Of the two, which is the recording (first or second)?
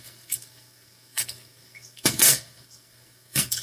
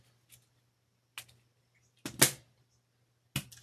second